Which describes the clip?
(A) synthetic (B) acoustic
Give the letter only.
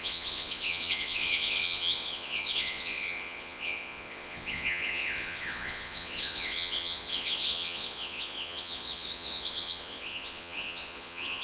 A